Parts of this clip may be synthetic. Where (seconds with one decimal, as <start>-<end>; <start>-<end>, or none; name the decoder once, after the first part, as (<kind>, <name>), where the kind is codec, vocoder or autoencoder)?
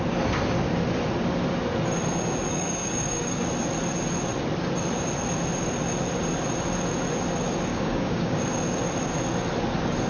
2.5-3.4 (codec, DAC); 7.7-8.4